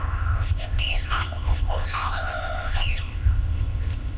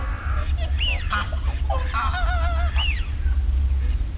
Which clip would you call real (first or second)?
second